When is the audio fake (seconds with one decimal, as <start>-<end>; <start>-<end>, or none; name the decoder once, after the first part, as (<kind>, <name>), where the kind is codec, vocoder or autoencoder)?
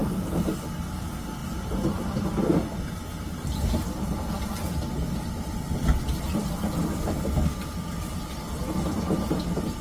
1.4-2.3 (vocoder, BigVGAN v2)